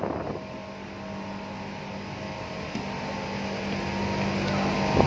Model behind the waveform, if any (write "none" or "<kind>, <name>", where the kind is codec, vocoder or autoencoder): none